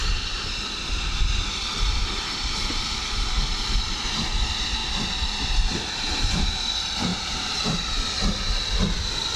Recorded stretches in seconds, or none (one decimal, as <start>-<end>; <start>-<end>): 0.0-7.1; 7.8-9.4